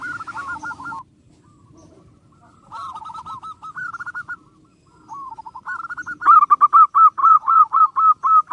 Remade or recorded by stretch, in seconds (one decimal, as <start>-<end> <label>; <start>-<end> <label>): 0.0-7.2 recorded; 7.2-7.8 remade; 7.8-8.5 recorded